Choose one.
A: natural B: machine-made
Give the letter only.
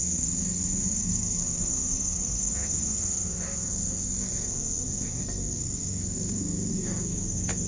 B